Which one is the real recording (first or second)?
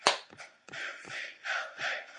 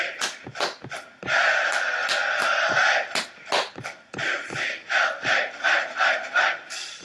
second